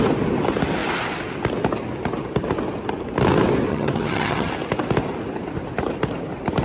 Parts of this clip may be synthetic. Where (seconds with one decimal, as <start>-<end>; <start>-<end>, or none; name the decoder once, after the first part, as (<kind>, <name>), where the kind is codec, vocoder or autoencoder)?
3.7-4.5 (vocoder, HiFi-GAN)

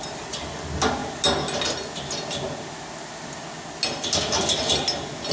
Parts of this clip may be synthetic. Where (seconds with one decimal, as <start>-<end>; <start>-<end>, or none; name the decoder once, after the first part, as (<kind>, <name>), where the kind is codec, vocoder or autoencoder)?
none

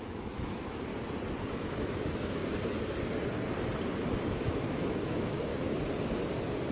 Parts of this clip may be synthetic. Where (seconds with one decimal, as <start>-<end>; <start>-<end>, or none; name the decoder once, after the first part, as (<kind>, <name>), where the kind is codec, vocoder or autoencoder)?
0.0-0.9 (autoencoder, DAC-VAE); 1.5-2.4; 4.1-5.5

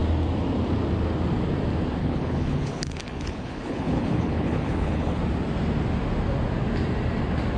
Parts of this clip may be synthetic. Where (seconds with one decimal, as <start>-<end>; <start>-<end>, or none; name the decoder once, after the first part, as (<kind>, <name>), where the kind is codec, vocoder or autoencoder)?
2.0-5.2 (codec, HILCodec)

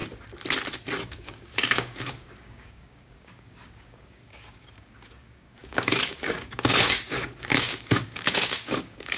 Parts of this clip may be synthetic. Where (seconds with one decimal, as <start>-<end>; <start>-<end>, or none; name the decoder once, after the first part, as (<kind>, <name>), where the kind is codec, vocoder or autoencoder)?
1.1-9.2 (codec, DAC)

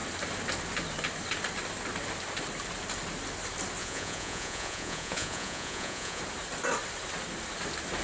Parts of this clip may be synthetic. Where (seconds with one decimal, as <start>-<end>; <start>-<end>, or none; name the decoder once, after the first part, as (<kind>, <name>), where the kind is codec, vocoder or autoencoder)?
3.8-6.2 (vocoder, Vocos)

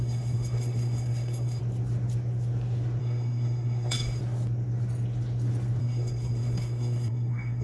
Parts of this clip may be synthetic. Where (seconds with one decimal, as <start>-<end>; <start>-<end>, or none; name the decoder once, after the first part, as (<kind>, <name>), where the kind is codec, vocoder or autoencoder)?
0.0-1.6 (codec, SNAC); 3.0-4.2; 5.8-7.6

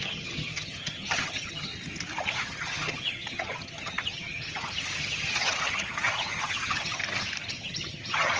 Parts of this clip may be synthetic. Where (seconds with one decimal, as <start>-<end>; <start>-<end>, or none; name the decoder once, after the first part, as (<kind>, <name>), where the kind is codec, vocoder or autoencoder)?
0.0-1.7 (vocoder, HiFi-GAN); 2.2-7.0; 7.5-8.4